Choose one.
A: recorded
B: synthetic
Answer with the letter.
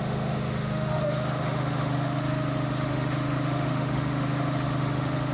B